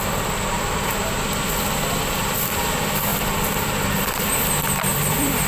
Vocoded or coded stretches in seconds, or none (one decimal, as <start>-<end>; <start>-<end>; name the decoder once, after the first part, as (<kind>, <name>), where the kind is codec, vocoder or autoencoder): 3.1-3.8 (vocoder, BigVGAN v2); 4.9-5.5